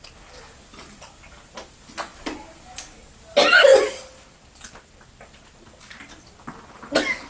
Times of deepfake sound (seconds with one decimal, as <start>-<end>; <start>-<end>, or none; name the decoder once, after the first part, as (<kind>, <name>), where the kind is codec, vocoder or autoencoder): none